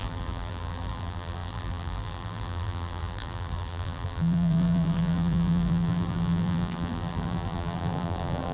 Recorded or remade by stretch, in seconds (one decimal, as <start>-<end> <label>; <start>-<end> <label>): 0.0-8.5 remade